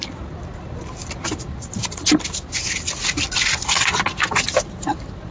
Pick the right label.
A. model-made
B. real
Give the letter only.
B